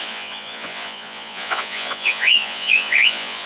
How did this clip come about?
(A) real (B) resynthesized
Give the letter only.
B